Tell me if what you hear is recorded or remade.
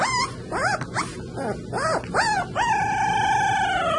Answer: recorded